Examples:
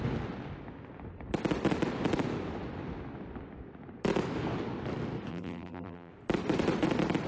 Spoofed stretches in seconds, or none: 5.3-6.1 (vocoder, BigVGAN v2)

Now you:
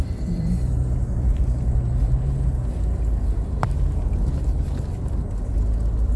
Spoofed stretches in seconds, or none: 0.0-2.6 (vocoder, BigVGAN v2)

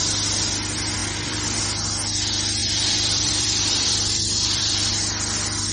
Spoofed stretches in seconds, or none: 1.0-1.6 (vocoder, BigVGAN v2); 2.6-4.9

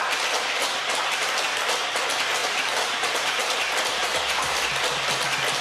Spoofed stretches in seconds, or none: 2.4-4.8 (vocoder, BigVGAN v2)

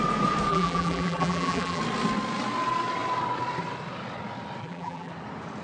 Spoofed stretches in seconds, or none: 0.5-1.8 (vocoder, BigVGAN v2); 4.6-5.1

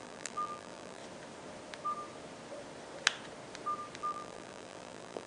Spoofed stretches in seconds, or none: 0.0-1.0 (vocoder, BigVGAN v2); 4.0-5.3

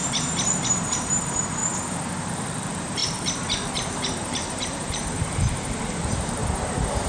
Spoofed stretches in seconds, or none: 0.7-1.6 (vocoder, BigVGAN v2); 2.2-6.4

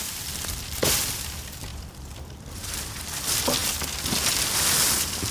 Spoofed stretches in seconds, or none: 1.7-3.2 (vocoder, BigVGAN v2)